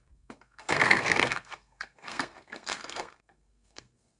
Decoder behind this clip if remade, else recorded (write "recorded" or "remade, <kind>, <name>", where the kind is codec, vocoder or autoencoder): remade, codec, SNAC